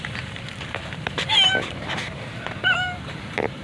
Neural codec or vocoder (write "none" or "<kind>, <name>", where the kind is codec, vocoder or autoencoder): vocoder, BigVGAN v2